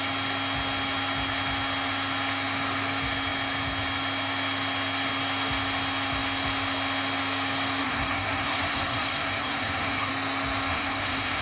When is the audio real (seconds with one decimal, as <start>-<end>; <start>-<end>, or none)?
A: 0.0-7.8; 10.1-10.7